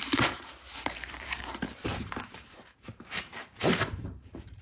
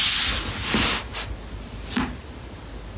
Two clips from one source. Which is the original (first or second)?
second